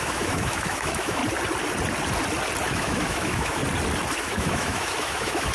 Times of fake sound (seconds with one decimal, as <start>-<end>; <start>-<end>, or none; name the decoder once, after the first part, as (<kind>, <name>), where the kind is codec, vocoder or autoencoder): 0.0-1.2 (autoencoder, DAC-VAE); 2.7-3.6; 4.2-5.5

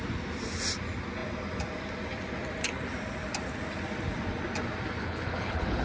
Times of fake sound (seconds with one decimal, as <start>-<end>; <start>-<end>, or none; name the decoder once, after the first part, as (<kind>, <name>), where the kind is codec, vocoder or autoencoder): 5.0-5.8 (codec, HILCodec)

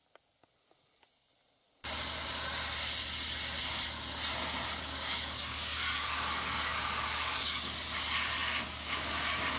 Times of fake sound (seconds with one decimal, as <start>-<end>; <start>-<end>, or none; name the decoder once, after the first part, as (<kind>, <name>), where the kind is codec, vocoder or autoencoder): 4.8-9.6 (codec, DAC)

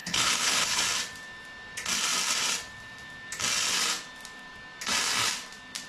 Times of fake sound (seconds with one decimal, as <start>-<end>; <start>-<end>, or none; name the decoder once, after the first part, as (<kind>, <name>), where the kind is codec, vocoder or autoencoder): 0.0-0.8 (codec, HILCodec)

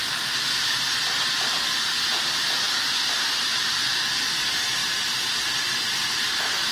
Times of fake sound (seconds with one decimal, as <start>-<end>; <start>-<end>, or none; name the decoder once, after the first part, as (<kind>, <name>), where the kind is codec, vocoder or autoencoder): none